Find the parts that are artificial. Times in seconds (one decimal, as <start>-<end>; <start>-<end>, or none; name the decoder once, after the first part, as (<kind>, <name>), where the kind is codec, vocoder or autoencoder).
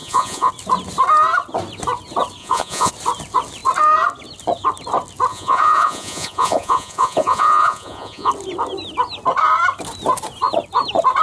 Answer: 0.0-0.5 (vocoder, Vocos); 2.4-2.9; 5.3-8.3